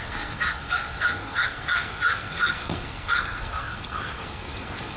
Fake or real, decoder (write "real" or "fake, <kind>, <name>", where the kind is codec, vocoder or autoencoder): fake, codec, SNAC